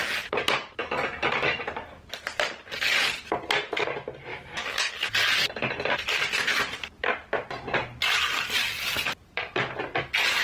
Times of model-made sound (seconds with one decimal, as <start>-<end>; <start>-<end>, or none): 4.3-4.9